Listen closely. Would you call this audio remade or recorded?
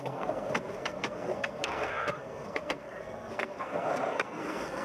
remade